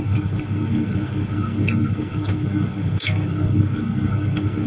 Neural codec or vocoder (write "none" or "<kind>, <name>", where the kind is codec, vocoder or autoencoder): codec, SNAC